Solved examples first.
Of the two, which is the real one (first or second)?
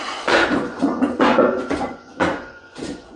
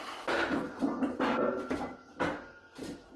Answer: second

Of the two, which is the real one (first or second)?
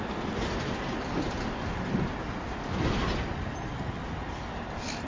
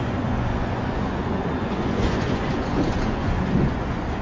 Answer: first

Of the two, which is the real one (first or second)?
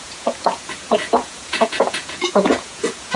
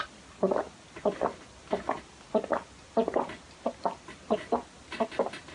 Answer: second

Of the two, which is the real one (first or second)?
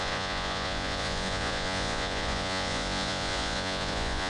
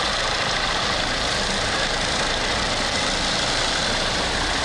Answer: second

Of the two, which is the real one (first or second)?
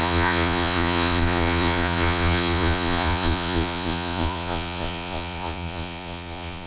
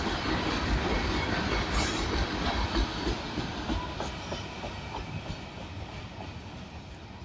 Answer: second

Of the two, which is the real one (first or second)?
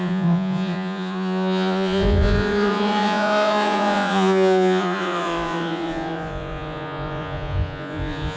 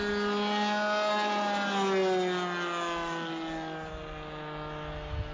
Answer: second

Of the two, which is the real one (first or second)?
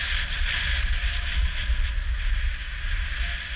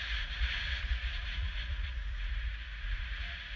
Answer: first